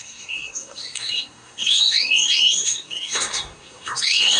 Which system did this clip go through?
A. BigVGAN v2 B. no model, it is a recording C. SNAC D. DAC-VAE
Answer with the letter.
C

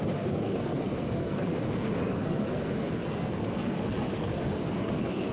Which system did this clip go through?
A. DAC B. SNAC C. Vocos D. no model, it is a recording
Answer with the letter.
B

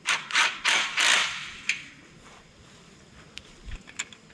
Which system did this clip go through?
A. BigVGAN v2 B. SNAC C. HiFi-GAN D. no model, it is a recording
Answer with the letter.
D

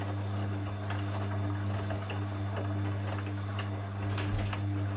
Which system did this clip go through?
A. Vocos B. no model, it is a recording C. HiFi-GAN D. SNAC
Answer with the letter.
B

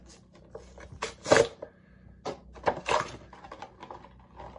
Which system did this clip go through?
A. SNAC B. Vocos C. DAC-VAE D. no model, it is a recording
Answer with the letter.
D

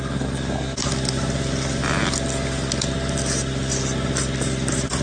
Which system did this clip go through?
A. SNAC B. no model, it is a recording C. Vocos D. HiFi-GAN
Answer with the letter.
B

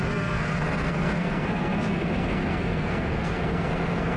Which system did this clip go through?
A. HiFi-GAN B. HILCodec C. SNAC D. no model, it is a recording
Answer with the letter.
C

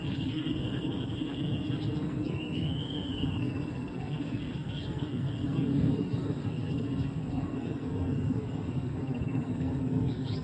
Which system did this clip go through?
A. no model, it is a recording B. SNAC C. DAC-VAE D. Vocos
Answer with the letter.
B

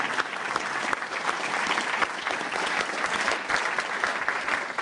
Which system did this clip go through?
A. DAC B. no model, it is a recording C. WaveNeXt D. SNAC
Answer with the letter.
B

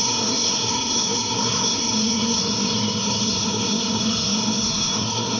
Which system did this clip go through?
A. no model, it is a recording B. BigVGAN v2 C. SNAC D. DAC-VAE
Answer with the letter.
C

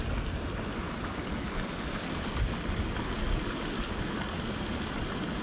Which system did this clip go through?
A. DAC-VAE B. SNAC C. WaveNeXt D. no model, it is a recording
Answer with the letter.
D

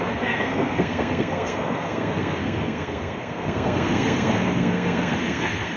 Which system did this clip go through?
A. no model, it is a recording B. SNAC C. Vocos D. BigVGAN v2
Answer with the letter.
B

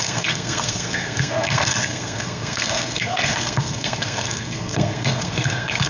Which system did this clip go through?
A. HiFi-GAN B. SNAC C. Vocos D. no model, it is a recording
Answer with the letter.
B